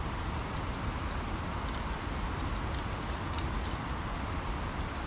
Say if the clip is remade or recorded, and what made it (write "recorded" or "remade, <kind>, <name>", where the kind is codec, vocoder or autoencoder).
recorded